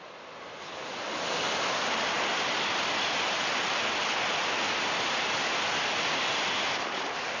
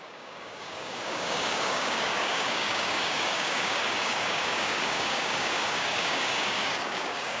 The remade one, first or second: second